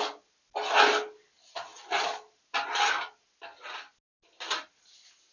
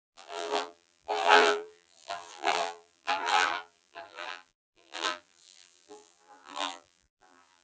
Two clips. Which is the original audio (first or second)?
first